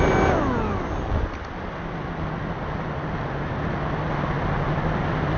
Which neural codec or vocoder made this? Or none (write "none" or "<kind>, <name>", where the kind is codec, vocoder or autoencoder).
none